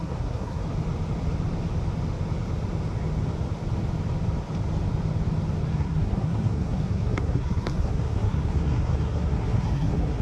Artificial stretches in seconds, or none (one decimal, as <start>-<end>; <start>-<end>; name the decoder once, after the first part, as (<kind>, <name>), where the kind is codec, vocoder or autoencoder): 0.0-0.6 (codec, SNAC); 5.6-10.2